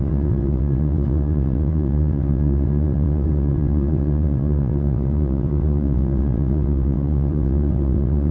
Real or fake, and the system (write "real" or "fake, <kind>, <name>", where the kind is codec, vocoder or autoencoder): fake, vocoder, WaveNeXt